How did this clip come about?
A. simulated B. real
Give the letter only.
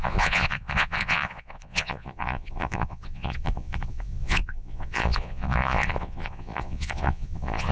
A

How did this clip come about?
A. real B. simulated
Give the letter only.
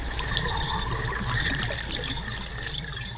A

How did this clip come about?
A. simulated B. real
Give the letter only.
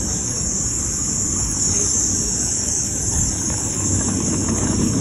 A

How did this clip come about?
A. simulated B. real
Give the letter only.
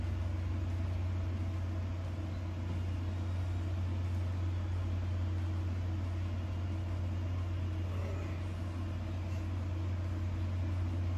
B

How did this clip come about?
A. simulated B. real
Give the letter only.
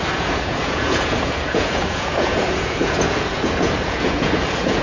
A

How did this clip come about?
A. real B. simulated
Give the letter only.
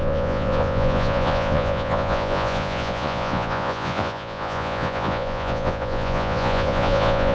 B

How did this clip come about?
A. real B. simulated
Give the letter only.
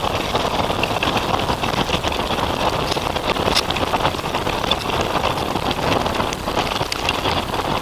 A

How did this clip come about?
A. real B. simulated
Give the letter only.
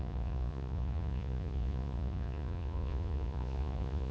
B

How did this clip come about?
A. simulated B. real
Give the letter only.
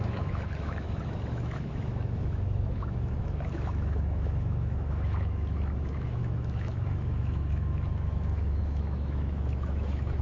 A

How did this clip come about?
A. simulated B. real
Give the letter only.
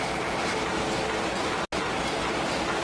B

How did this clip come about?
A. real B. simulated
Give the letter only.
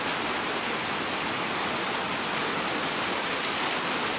A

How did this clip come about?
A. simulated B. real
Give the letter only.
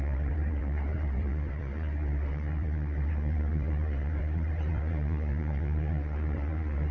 A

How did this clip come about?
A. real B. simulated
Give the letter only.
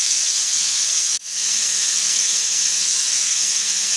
B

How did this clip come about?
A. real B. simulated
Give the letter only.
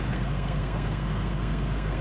B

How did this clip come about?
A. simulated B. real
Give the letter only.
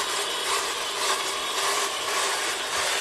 A